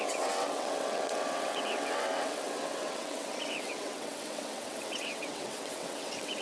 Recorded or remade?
remade